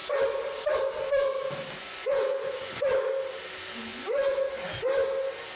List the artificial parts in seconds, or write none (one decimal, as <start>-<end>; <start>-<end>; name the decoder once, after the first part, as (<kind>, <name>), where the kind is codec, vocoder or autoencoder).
1.8-2.9 (vocoder, Vocos); 3.9-4.5